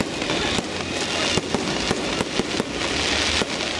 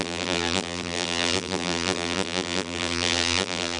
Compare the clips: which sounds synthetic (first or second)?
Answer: second